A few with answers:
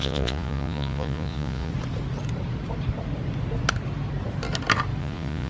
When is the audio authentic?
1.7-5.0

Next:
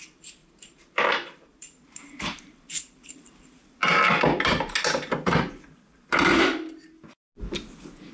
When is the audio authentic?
0.0-0.4; 3.8-8.1

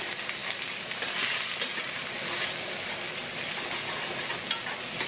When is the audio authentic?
0.0-5.1

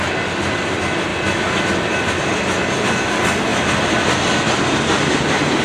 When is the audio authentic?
0.0-5.6

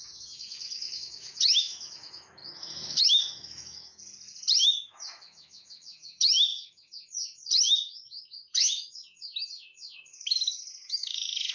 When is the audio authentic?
4.0-4.6; 10.3-10.8